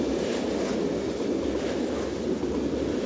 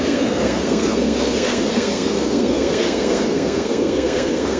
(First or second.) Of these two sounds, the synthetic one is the second